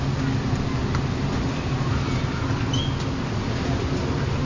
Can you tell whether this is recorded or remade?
recorded